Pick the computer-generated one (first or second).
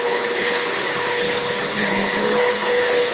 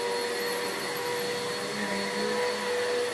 first